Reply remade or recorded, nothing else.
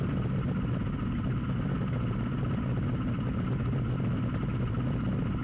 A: recorded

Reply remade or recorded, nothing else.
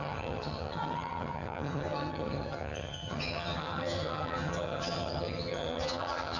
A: remade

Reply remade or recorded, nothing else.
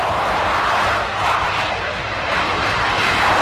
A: recorded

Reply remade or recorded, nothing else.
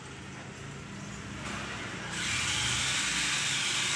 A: recorded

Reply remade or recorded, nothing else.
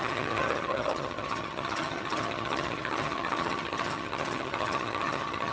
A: remade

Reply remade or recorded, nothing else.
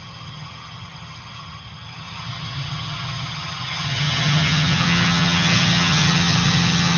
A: remade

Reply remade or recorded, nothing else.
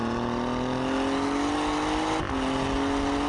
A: recorded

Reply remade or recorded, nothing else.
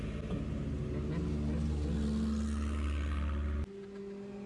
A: recorded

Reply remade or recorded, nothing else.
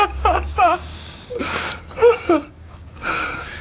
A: remade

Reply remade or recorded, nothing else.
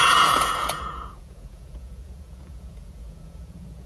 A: remade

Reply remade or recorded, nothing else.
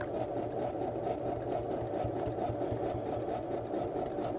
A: recorded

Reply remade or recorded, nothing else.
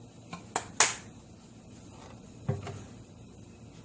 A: recorded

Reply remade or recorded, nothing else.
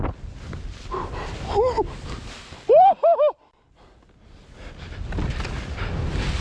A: recorded